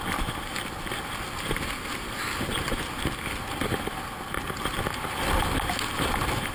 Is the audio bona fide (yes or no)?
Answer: yes